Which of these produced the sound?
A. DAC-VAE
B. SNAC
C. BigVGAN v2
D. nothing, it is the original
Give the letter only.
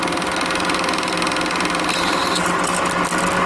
D